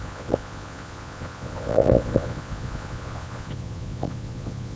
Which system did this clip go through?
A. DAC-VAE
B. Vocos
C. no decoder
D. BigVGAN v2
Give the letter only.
B